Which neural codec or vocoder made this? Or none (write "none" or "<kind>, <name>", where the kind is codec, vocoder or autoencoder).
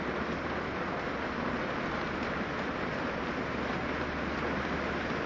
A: none